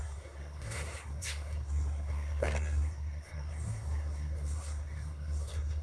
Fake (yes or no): yes